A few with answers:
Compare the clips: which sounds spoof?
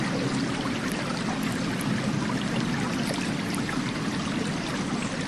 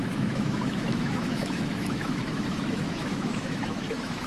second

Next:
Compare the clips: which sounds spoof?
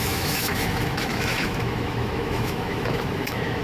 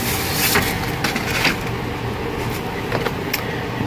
first